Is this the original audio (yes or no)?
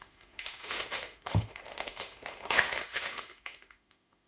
no